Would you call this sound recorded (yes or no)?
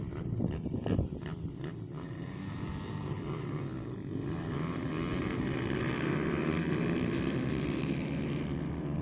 yes